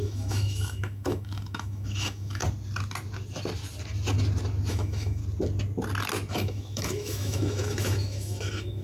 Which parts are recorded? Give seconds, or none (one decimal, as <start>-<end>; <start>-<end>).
2.4-4.7; 5.2-6.3